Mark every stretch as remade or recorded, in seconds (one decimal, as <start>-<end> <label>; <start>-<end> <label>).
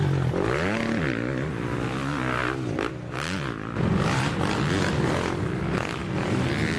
0.0-6.8 recorded